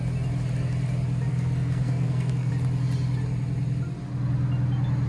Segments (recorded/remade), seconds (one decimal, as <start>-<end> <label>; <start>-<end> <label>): 0.0-1.3 recorded; 1.3-2.5 remade; 2.5-5.1 recorded